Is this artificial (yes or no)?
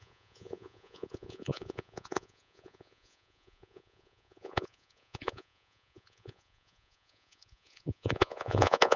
yes